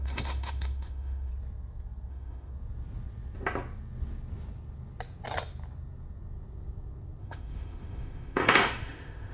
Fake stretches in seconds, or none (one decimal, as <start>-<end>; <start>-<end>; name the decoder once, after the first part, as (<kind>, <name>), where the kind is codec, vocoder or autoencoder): 0.0-1.3 (autoencoder, DAC-VAE); 2.1-2.5; 7.2-9.3